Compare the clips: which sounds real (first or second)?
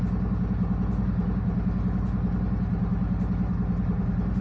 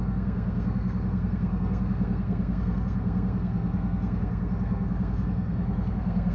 first